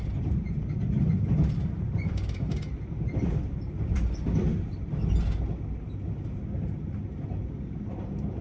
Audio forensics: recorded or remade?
recorded